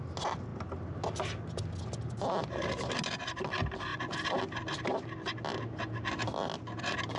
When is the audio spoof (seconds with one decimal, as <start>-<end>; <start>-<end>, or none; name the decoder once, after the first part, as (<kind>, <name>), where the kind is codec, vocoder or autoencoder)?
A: none